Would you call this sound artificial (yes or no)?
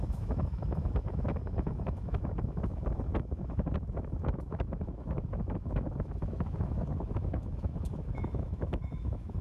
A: yes